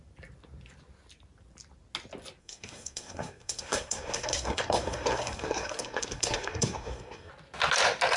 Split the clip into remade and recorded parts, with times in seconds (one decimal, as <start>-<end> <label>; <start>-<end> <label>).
0.0-2.4 recorded; 2.4-7.3 remade; 7.3-8.2 recorded